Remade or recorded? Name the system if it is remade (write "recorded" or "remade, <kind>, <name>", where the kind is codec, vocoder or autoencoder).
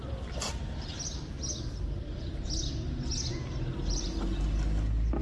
recorded